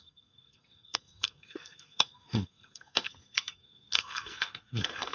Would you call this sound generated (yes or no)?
yes